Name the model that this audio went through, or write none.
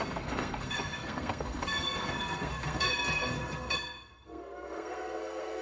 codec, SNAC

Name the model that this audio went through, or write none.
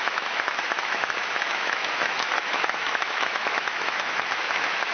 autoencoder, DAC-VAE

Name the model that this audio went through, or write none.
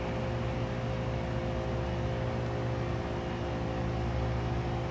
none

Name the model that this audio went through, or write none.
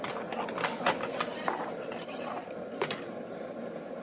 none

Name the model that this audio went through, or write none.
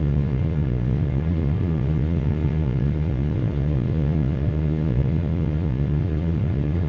vocoder, Vocos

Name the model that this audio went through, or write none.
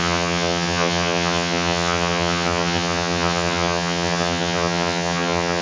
vocoder, HiFi-GAN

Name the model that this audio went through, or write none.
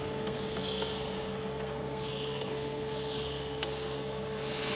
codec, SNAC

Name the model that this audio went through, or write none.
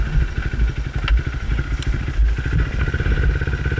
none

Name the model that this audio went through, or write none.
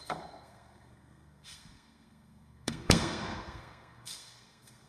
codec, SNAC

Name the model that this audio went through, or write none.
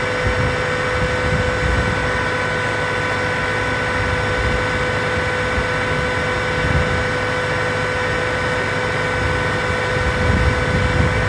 none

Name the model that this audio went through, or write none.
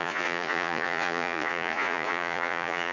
vocoder, Vocos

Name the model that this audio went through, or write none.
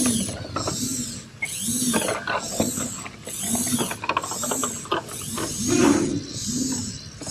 none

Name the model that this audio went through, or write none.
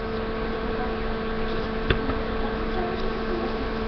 none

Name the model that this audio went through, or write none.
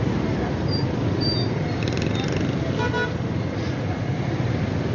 none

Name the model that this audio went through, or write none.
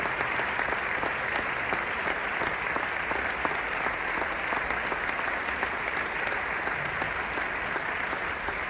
none